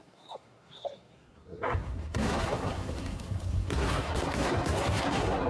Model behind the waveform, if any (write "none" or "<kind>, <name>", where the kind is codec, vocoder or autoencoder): codec, SNAC